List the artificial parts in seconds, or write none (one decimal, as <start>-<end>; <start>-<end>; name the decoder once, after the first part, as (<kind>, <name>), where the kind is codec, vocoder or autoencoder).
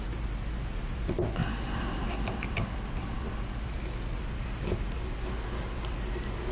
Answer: none